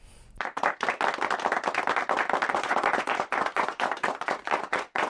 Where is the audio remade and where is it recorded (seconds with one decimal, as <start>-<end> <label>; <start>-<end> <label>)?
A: 0.0-0.6 remade; 0.6-2.5 recorded; 2.5-5.1 remade